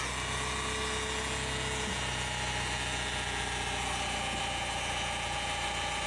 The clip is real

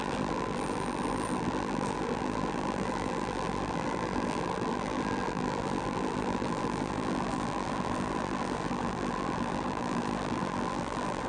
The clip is fake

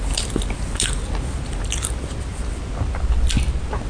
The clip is real